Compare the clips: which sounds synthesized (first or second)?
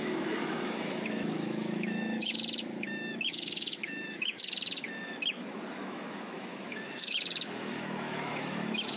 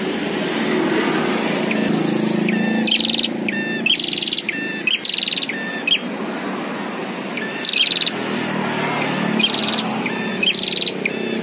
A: first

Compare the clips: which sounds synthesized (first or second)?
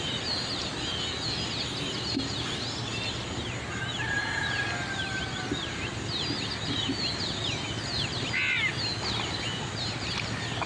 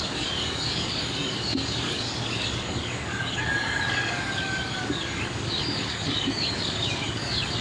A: second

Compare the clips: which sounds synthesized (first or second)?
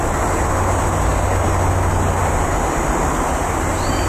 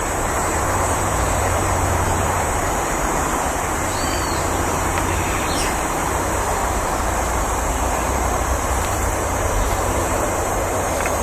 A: second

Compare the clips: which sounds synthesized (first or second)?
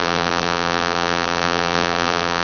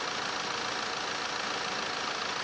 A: first